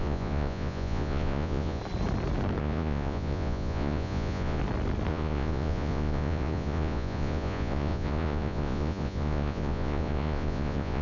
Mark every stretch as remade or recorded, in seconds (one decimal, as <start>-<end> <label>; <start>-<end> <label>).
0.0-1.8 remade; 1.8-2.6 recorded; 2.6-4.6 remade; 4.6-5.1 recorded; 5.1-11.0 remade

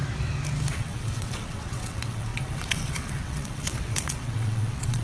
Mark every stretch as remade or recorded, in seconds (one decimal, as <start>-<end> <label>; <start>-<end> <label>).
0.0-0.7 recorded; 0.7-5.0 remade

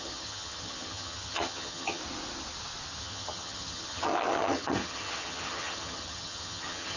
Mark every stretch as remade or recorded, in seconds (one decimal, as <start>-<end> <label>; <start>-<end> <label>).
0.0-2.0 remade; 2.0-3.0 recorded; 3.0-7.0 remade

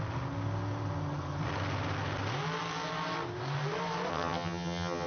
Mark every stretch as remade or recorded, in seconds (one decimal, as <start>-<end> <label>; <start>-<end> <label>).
0.0-4.1 recorded; 4.1-5.1 remade

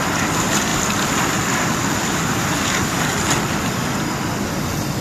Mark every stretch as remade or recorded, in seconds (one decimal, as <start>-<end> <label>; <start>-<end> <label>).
0.0-0.7 recorded; 0.7-3.5 remade; 3.5-5.0 recorded